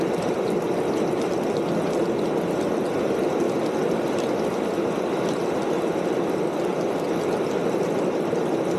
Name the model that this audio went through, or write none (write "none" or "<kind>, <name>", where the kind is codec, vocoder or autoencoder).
none